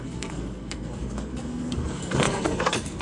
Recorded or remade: remade